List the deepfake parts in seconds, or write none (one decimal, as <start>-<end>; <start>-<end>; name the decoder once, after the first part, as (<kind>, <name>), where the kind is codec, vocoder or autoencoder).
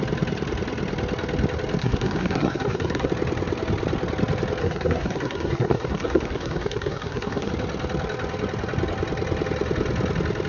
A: 1.8-3.1 (codec, SNAC); 4.6-7.5